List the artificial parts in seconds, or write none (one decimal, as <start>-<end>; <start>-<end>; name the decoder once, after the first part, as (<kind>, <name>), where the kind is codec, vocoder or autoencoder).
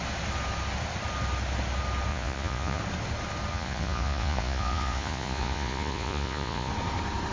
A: 2.1-2.8 (vocoder, Vocos); 3.5-6.7